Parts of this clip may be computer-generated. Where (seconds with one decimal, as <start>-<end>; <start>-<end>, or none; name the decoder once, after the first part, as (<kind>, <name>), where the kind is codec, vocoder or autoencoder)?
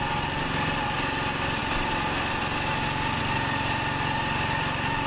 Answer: none